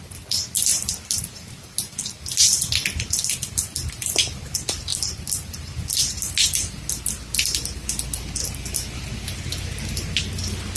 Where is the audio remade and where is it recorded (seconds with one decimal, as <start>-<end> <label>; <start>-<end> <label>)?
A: 0.0-4.9 recorded; 4.9-5.6 remade; 5.6-10.8 recorded